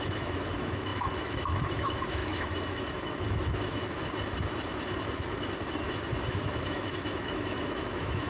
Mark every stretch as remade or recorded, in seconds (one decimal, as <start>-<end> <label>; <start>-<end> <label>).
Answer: 0.0-4.0 remade; 4.0-6.3 recorded; 6.3-8.3 remade